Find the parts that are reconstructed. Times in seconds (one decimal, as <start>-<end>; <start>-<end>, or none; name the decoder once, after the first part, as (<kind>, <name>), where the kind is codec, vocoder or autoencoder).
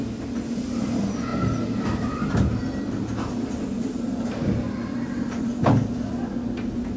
none